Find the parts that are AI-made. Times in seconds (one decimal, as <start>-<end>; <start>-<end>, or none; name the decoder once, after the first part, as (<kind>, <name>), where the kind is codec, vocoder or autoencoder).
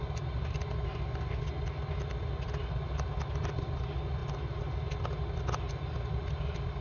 none